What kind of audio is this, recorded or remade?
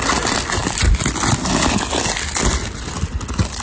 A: recorded